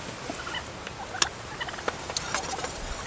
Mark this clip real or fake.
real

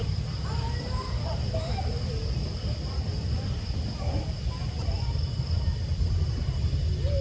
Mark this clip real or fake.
real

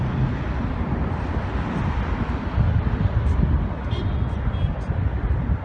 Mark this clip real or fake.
real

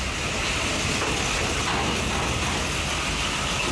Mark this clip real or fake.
real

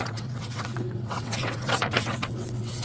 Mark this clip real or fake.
fake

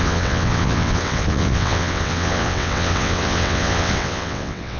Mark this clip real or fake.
fake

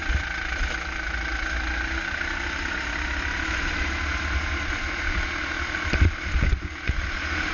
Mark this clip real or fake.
real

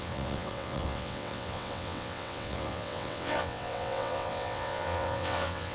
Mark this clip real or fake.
fake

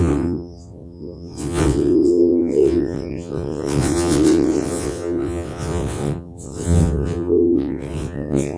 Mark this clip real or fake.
fake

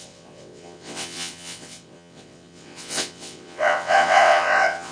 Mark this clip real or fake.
fake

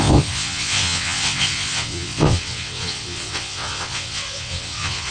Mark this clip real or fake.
fake